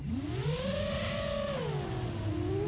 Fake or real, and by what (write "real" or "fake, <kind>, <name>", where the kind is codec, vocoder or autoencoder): real